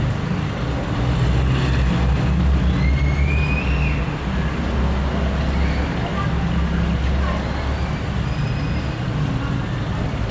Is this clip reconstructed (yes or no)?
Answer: no